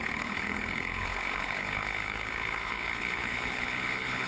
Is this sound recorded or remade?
remade